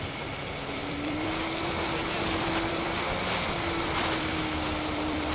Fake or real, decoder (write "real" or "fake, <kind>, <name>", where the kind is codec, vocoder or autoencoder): fake, vocoder, BigVGAN v2